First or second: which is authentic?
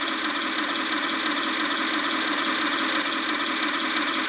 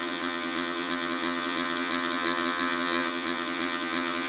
first